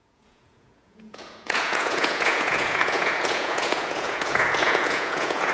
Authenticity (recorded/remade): remade